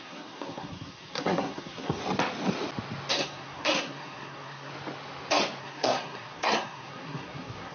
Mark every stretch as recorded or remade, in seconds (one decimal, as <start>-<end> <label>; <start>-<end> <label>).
0.0-2.0 remade; 2.0-3.1 recorded; 3.1-4.7 remade; 4.7-5.6 recorded; 5.6-7.7 remade